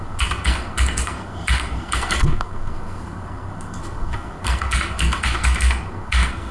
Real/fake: fake